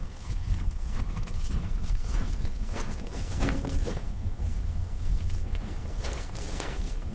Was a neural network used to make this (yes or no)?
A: yes